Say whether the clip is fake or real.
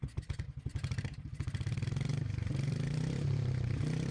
fake